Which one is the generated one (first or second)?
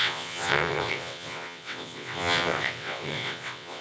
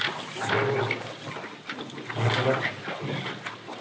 first